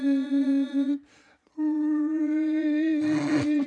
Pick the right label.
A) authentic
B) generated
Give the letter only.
B